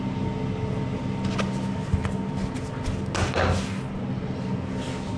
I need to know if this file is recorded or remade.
recorded